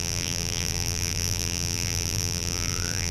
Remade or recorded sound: remade